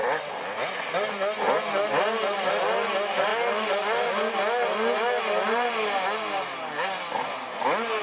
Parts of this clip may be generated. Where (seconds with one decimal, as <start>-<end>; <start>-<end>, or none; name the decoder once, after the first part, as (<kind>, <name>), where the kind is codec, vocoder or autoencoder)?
none